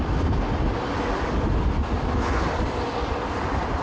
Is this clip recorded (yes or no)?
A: yes